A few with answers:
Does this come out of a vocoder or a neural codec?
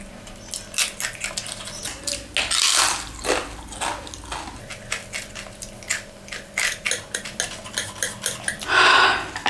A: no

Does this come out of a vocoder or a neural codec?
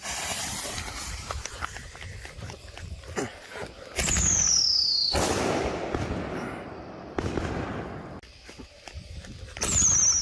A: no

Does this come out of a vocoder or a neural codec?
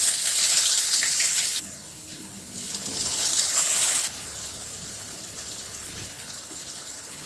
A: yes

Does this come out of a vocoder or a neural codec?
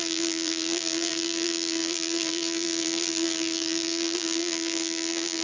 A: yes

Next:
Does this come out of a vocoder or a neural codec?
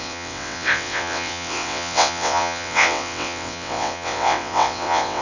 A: yes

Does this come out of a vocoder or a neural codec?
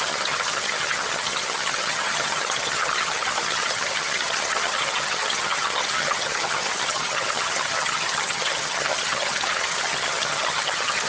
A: yes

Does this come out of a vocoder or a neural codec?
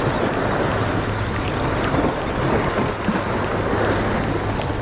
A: no